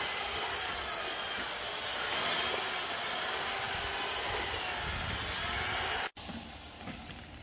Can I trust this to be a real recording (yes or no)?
yes